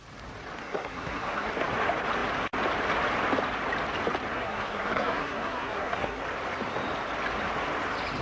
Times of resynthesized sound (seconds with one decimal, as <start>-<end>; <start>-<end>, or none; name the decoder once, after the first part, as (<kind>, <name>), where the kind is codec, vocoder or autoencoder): 0.6-1.5 (codec, SNAC); 4.3-6.2